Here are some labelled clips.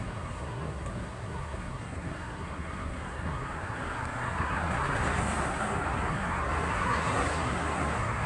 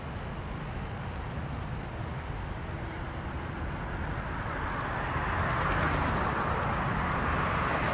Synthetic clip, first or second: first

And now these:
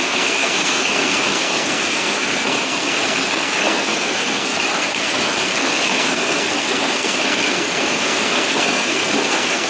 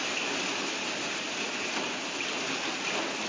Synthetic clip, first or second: first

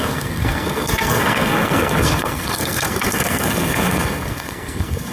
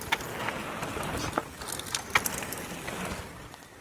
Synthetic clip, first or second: first